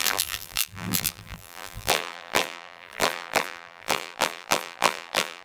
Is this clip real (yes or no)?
no